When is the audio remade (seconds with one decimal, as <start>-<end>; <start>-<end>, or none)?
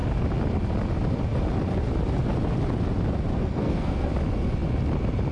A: 3.3-4.1